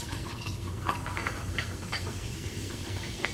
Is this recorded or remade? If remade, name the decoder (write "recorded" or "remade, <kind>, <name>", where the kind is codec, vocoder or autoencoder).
remade, codec, SNAC